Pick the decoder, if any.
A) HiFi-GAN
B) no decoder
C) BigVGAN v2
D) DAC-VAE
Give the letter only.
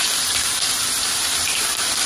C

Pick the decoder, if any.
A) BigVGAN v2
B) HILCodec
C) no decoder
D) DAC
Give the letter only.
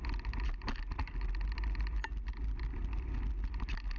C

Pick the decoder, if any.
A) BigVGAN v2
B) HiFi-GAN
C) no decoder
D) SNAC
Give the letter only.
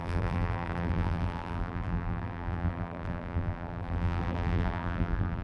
A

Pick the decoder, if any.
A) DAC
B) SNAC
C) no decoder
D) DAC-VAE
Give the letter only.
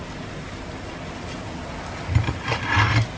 C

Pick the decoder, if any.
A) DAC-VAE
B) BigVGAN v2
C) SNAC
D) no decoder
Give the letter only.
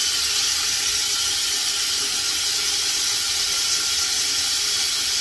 D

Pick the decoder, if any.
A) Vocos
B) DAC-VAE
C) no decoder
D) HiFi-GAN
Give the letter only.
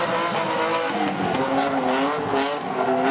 C